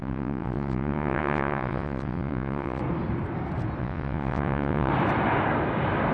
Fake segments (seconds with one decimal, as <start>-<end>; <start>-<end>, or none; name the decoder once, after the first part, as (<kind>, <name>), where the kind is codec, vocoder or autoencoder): 0.0-2.8 (vocoder, WaveNeXt); 3.8-4.9